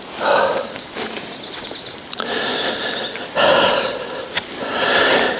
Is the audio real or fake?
real